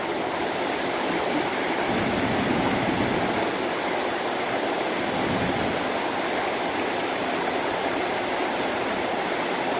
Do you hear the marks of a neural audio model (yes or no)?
no